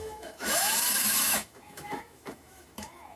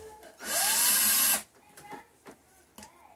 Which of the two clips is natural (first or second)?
second